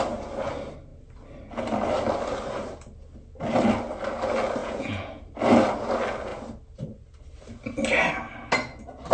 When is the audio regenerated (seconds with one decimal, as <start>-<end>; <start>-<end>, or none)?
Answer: 4.6-5.2